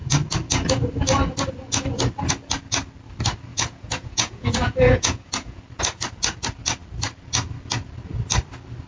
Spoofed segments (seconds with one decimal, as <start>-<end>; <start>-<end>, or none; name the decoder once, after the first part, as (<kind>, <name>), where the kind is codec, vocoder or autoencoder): 3.5-5.6 (vocoder, Vocos)